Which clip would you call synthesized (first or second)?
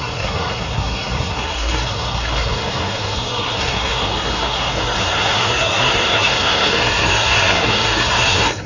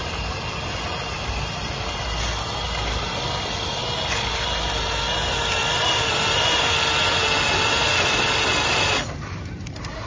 first